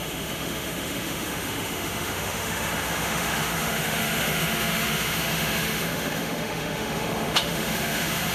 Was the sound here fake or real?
fake